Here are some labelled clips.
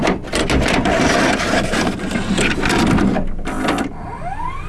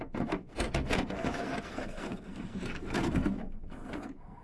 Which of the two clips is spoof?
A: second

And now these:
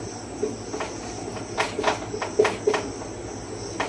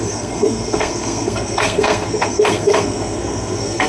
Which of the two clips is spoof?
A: second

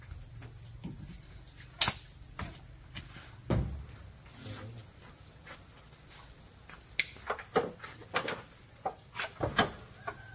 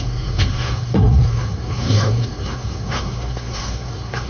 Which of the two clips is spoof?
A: second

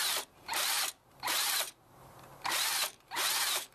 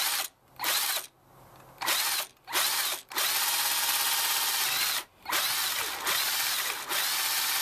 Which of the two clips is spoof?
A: first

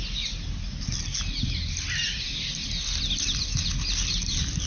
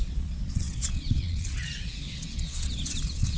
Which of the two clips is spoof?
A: second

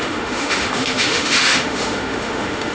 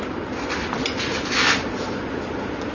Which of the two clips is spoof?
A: first